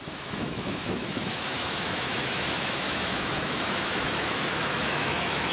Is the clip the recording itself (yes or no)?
no